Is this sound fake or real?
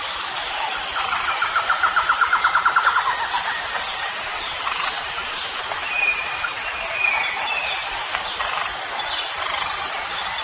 fake